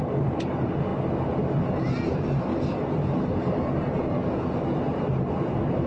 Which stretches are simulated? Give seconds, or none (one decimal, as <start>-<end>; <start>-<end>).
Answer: none